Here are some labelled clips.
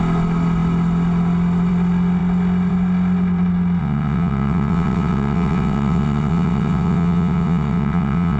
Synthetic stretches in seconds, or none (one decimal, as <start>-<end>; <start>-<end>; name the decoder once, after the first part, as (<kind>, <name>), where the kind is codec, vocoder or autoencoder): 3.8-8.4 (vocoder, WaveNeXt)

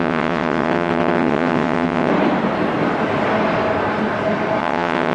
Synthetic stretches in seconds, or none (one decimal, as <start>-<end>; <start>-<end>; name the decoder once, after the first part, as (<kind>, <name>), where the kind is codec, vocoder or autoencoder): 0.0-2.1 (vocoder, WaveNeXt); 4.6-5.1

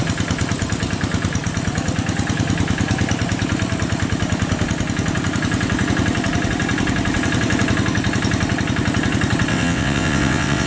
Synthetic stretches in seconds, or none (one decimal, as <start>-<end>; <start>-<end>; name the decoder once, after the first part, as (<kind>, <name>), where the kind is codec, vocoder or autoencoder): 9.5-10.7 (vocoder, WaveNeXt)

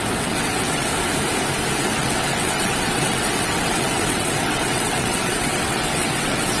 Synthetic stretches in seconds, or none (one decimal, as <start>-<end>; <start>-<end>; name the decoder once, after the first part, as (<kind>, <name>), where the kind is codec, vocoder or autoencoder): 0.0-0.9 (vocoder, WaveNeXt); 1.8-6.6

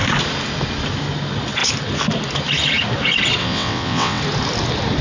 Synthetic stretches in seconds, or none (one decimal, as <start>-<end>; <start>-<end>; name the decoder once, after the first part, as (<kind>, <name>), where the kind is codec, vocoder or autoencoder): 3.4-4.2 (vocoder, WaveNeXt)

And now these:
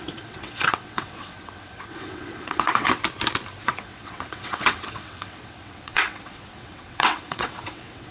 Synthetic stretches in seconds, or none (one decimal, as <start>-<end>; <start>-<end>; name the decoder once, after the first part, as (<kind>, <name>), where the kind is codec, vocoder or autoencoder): 0.0-3.0 (vocoder, WaveNeXt); 3.6-8.1

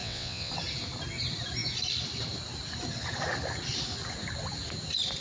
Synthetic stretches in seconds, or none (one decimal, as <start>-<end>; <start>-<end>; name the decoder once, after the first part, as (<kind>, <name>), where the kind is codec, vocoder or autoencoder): 0.0-0.5 (vocoder, WaveNeXt)